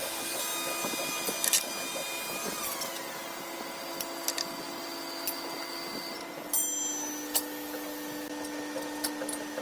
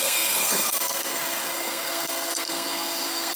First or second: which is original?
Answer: first